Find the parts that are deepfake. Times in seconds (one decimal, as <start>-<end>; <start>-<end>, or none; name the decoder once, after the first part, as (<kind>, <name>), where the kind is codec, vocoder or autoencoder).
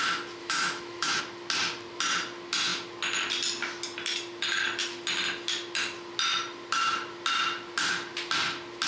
0.4-1.2 (autoencoder, DAC-VAE)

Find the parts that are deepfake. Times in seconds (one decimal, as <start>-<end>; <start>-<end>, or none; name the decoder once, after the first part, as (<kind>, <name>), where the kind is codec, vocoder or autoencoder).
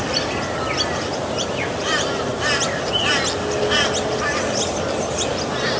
none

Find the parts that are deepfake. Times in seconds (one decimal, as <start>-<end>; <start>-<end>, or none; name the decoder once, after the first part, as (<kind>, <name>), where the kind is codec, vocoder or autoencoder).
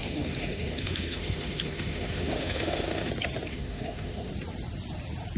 0.0-3.1 (autoencoder, DAC-VAE); 3.5-4.3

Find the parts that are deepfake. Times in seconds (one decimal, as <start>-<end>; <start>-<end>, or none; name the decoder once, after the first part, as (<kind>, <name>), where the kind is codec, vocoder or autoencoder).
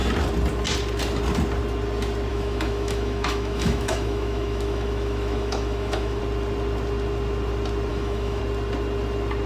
2.3-6.2 (autoencoder, DAC-VAE); 7.9-8.4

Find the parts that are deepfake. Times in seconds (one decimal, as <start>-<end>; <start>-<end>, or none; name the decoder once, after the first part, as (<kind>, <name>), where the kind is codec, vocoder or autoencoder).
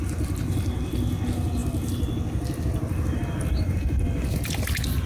none